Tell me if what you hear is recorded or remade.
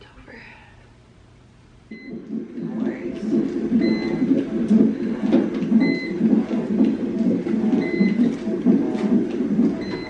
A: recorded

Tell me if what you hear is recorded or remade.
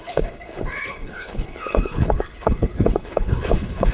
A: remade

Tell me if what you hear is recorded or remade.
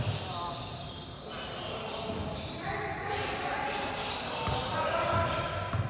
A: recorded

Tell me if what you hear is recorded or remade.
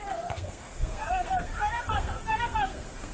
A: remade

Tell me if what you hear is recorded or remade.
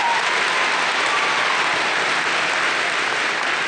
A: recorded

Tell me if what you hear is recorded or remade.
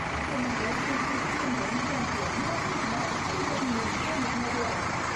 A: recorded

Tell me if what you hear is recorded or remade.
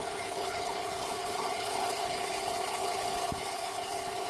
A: remade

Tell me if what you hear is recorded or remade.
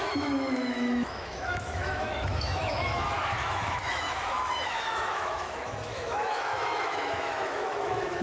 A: remade